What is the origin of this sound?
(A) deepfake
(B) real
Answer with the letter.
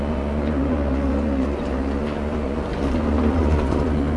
A